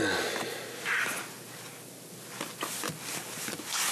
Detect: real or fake real